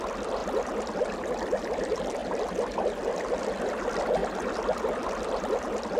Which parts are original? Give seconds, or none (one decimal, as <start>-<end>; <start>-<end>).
0.0-6.0